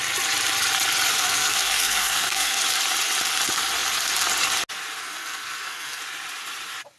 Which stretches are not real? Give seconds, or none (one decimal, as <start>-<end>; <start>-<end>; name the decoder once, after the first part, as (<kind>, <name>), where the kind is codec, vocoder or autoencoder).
1.1-2.6 (codec, SNAC); 5.0-6.0